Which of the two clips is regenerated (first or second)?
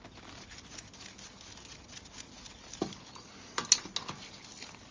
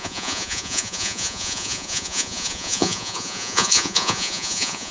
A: second